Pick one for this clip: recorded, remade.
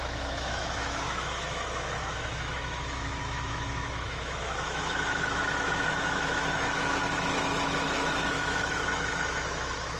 remade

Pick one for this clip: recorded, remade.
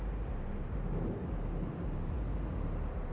recorded